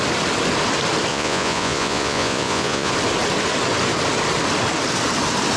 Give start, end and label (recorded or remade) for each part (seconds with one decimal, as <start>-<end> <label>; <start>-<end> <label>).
0.0-1.1 recorded; 1.1-2.9 remade; 2.9-5.6 recorded